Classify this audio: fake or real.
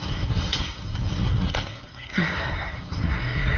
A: fake